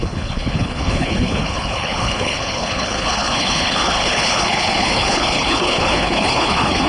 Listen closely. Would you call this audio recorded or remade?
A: remade